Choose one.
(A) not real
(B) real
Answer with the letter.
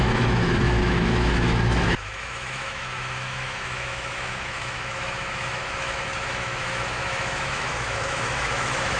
A